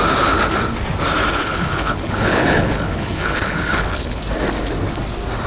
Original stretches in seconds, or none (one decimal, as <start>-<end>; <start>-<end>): 0.0-1.4; 4.2-5.5